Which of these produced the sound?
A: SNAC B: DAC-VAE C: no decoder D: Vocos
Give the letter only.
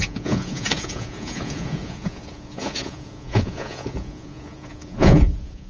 D